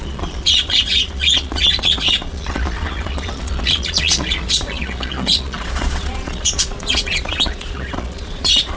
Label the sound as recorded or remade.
remade